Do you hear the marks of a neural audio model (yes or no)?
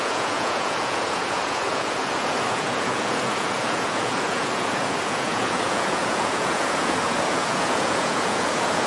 yes